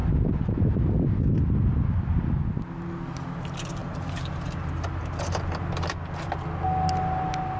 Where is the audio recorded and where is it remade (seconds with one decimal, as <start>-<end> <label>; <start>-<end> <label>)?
0.0-0.5 remade; 0.5-3.8 recorded; 3.8-4.7 remade; 4.7-7.6 recorded